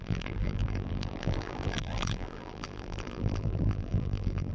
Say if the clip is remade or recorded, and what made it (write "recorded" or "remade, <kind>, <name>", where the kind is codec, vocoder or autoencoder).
remade, vocoder, BigVGAN v2